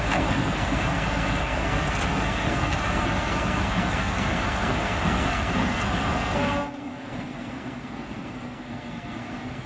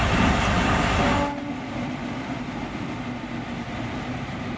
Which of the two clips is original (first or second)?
second